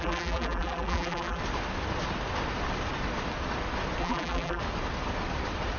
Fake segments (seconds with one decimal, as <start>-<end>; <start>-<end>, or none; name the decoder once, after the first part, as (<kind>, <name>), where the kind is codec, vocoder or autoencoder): 0.0-1.4 (vocoder, BigVGAN v2); 4.0-4.6